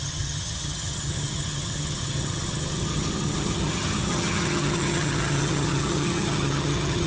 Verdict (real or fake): fake